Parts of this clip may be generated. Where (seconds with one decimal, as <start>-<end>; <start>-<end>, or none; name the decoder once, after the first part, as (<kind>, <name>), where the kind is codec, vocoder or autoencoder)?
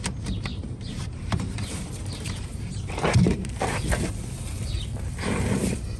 0.5-4.1 (vocoder, BigVGAN v2)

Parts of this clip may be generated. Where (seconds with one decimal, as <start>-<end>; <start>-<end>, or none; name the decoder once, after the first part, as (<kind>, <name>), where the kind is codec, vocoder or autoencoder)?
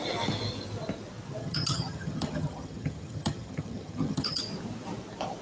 1.4-4.4 (vocoder, HiFi-GAN)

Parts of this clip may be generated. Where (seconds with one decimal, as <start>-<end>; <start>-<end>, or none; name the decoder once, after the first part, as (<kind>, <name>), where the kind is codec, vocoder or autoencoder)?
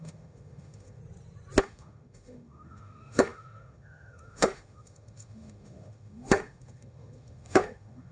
0.0-1.0 (autoencoder, DAC-VAE); 1.6-8.1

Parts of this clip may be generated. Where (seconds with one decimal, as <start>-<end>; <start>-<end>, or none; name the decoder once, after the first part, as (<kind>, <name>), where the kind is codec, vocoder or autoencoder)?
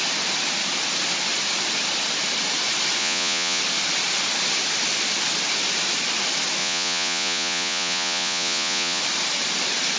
3.0-3.6 (vocoder, Vocos); 6.6-9.0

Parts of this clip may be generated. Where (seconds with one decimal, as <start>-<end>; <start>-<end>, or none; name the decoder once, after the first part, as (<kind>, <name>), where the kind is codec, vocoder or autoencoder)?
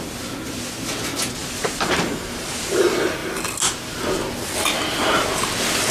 1.4-2.8 (vocoder, BigVGAN v2)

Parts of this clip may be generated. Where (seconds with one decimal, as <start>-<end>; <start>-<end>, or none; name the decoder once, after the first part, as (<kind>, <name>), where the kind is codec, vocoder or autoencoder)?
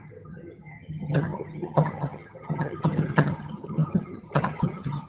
0.0-5.1 (vocoder, HiFi-GAN)